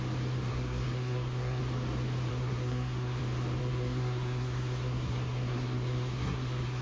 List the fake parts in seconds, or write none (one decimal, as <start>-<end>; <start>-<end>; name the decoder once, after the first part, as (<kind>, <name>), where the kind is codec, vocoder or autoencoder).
0.5-1.6 (codec, SNAC); 2.3-3.2; 3.6-6.8